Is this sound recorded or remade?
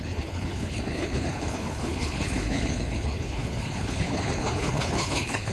remade